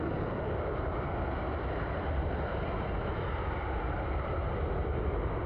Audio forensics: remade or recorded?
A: recorded